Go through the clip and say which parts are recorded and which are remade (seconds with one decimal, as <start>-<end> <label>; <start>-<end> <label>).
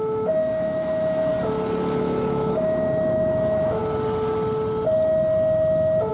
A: 0.0-1.3 remade; 1.3-2.0 recorded; 2.0-3.8 remade; 3.8-6.1 recorded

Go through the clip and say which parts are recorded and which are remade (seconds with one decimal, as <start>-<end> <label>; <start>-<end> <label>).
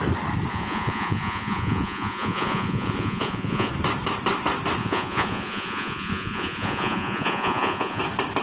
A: 0.0-0.5 recorded; 0.5-3.7 remade; 3.7-4.8 recorded; 4.8-8.0 remade; 8.0-8.4 recorded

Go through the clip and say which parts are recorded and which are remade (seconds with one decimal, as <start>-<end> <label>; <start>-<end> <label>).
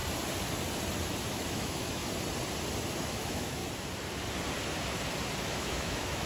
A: 0.0-1.3 recorded; 1.3-2.0 remade; 2.0-3.0 recorded; 3.0-3.6 remade; 3.6-5.4 recorded; 5.4-6.3 remade